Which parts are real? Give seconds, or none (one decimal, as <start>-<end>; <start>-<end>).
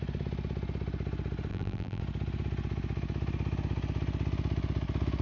0.0-1.5; 2.0-5.2